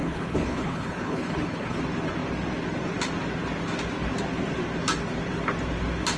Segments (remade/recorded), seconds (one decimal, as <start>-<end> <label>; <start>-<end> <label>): 0.0-1.8 remade; 1.8-6.2 recorded